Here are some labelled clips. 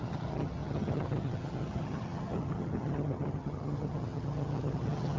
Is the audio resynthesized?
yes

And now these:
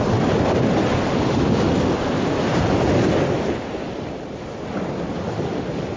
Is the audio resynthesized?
no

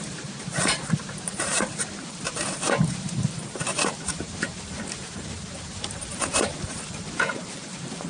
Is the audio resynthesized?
yes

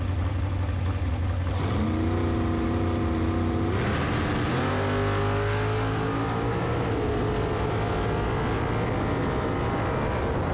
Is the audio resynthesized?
no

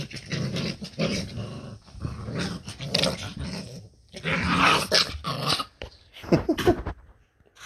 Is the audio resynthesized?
yes